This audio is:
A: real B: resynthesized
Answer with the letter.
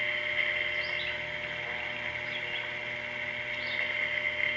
A